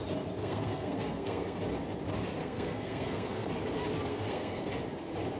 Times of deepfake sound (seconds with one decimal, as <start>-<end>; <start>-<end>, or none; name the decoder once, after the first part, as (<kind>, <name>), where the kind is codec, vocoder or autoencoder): 0.4-1.6 (codec, SNAC); 2.4-3.5; 4.1-4.7